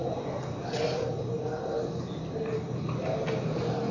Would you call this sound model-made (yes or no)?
no